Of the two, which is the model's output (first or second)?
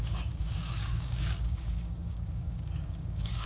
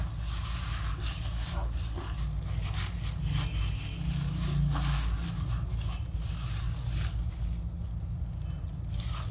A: first